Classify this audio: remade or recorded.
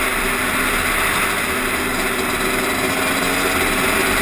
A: recorded